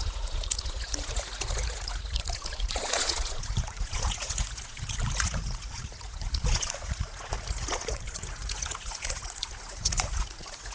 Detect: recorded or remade remade